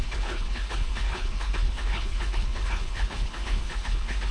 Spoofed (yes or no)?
yes